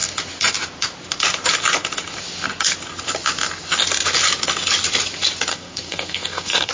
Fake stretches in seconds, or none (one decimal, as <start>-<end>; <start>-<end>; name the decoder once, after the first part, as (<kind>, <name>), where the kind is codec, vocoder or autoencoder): 5.5-6.7 (codec, SNAC)